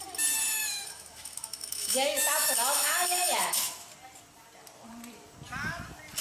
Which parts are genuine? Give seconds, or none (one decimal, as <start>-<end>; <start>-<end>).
0.0-0.6; 3.9-6.2